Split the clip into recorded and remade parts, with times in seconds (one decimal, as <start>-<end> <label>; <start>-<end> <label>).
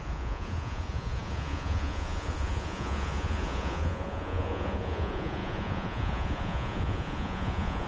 0.0-7.9 remade